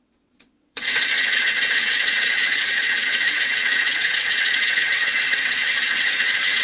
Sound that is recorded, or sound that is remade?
remade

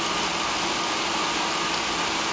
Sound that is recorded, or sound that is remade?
recorded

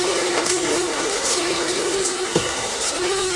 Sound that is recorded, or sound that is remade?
remade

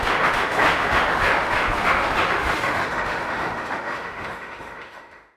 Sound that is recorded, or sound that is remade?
remade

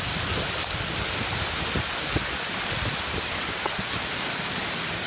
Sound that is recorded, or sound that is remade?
recorded